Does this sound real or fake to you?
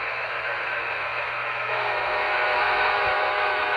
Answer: fake